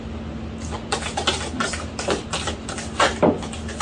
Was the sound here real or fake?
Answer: real